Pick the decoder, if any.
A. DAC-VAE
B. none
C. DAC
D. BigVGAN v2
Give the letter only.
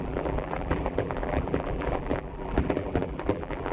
D